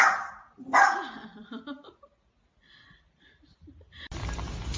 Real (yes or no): yes